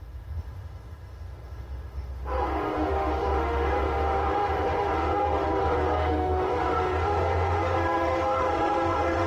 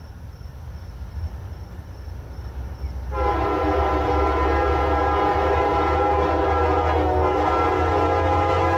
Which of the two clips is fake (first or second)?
first